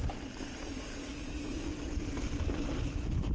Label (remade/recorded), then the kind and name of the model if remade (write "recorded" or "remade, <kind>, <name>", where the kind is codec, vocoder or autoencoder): recorded